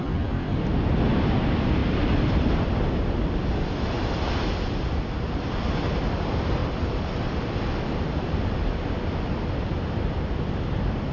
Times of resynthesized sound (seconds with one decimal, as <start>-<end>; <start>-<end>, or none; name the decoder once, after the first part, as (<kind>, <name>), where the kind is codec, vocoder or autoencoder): none